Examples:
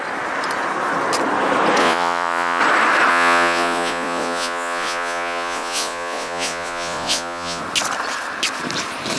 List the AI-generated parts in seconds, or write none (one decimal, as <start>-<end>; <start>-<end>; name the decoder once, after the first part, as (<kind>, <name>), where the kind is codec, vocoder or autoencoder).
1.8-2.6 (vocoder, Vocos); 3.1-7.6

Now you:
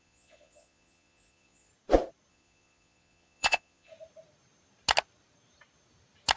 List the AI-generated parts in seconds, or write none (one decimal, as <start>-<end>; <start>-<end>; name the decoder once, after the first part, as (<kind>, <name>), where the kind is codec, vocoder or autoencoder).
0.0-1.7 (vocoder, Vocos); 2.3-3.9

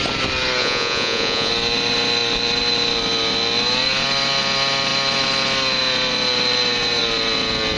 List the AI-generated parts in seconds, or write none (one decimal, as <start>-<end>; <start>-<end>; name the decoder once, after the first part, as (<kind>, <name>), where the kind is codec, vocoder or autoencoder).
0.6-1.5 (vocoder, Vocos)

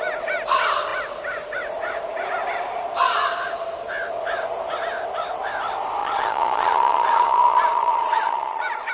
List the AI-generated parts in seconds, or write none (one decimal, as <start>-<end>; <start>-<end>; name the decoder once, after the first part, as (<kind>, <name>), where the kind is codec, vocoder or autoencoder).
6.0-8.9 (vocoder, Vocos)